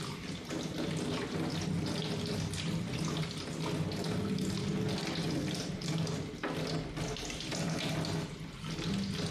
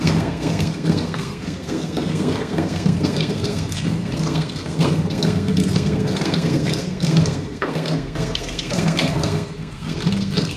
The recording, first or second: first